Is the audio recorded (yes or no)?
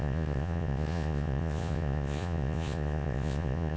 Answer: no